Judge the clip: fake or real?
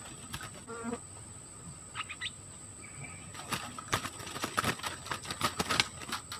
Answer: real